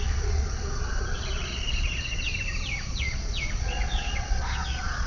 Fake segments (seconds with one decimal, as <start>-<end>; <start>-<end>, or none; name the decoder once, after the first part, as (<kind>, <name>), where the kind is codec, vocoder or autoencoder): 0.0-2.3 (vocoder, Vocos); 2.9-5.1